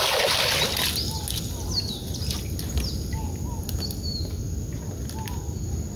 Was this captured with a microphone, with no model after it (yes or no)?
yes